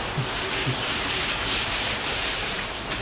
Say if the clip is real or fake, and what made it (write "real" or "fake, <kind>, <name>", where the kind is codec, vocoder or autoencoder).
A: fake, vocoder, BigVGAN v2